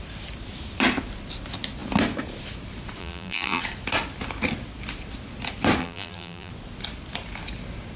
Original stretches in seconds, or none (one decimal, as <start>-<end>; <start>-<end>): 0.0-3.0; 3.6-5.8; 6.5-8.0